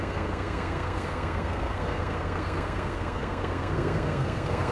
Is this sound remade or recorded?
remade